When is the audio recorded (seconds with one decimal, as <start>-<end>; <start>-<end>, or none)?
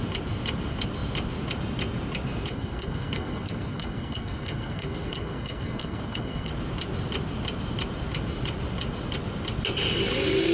0.0-2.5; 6.5-10.5